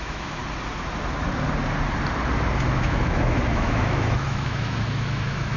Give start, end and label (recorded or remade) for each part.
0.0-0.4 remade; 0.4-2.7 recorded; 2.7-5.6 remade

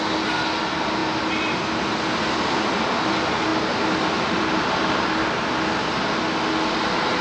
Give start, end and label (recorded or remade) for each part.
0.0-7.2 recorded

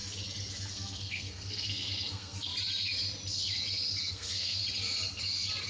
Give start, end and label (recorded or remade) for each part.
0.0-0.7 recorded; 0.7-2.5 remade; 2.5-4.1 recorded; 4.1-4.6 remade; 4.6-5.7 recorded